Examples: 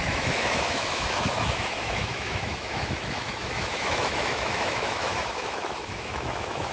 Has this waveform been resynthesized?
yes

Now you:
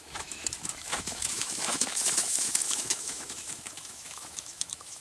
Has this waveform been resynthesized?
yes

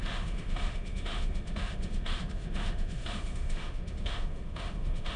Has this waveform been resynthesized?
yes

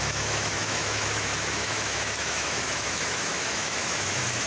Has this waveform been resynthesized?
yes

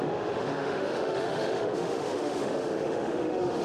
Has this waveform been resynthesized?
yes